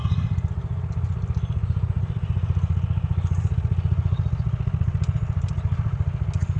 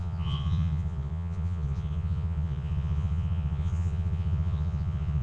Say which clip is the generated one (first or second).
second